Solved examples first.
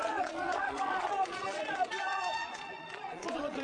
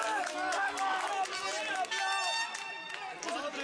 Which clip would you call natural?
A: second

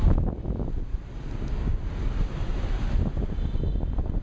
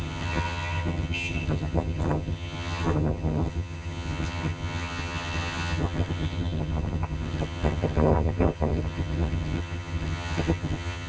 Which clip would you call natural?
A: first